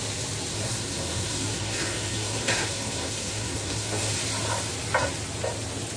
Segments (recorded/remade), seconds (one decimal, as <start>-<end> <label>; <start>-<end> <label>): 0.0-0.5 recorded; 0.5-4.1 remade; 4.1-6.0 recorded